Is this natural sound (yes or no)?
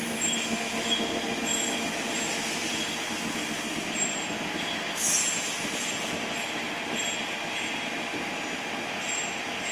yes